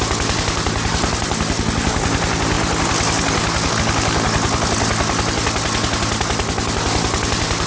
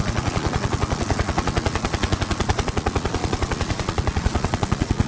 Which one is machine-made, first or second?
second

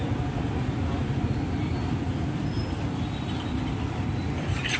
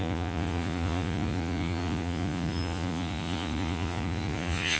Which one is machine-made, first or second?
second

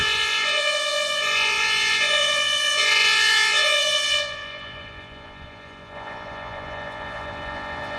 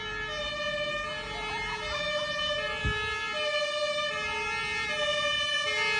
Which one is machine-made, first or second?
first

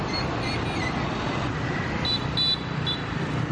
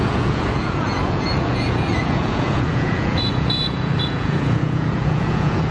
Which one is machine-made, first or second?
second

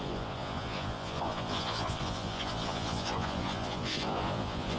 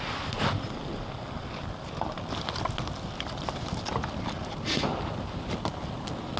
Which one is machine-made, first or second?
first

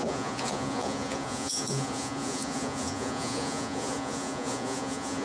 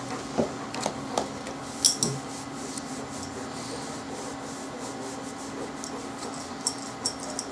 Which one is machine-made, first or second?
first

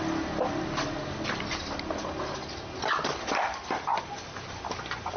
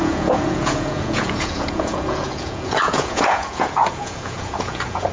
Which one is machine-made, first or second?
second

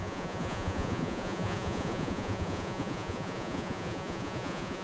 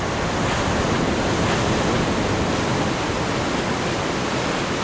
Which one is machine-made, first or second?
first